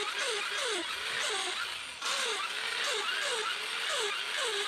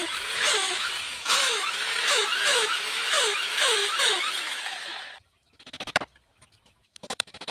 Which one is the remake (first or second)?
second